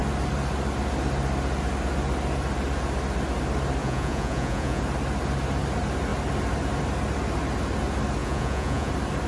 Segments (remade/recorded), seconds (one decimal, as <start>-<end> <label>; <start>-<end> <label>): 0.0-3.8 recorded; 3.8-4.8 remade; 4.8-8.2 recorded; 8.2-8.9 remade; 8.9-9.3 recorded